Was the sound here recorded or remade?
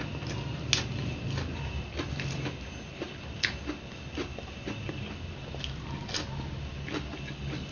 recorded